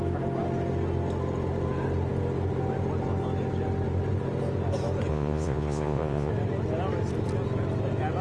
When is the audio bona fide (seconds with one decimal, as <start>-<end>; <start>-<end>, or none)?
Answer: 0.0-5.1; 6.3-8.2